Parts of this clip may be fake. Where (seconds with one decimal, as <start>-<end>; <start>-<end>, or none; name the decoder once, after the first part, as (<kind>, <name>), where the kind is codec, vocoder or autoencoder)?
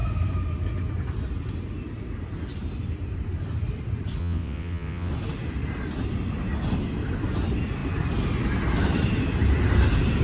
4.2-5.1 (vocoder, WaveNeXt)